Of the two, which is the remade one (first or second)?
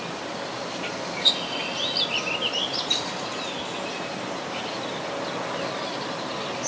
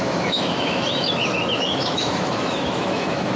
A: second